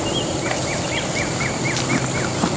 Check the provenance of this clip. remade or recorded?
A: recorded